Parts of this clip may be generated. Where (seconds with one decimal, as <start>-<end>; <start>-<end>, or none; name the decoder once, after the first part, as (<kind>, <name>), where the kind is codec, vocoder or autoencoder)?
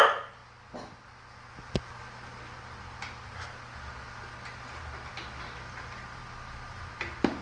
none